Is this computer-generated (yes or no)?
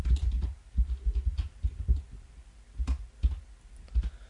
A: no